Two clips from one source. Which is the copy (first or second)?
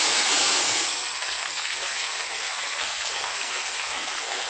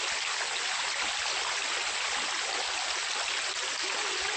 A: first